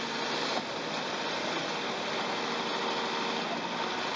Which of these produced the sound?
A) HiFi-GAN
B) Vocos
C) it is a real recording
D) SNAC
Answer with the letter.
C